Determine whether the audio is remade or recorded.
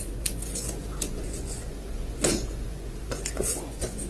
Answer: remade